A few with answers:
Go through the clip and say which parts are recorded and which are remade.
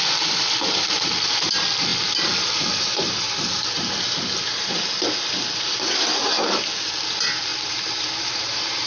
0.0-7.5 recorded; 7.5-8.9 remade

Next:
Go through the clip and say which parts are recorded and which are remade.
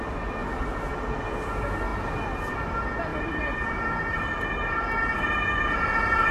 0.0-0.4 recorded; 0.4-0.9 remade; 0.9-3.1 recorded; 3.1-4.8 remade; 4.8-6.3 recorded